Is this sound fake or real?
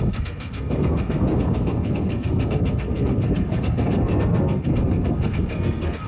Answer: fake